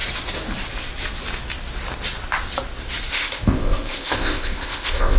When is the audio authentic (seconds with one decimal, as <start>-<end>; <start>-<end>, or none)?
0.0-3.1